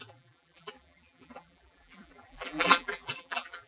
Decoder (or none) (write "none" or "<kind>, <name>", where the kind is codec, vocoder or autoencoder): vocoder, BigVGAN v2